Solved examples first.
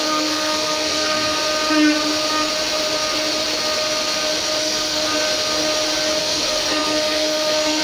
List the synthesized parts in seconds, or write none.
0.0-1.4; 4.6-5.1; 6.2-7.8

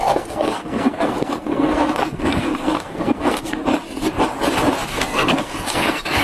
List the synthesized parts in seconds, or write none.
0.0-3.6; 4.9-6.2